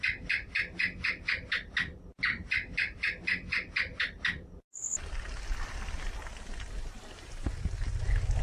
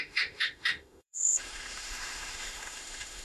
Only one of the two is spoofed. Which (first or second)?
second